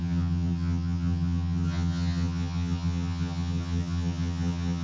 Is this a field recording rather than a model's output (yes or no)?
no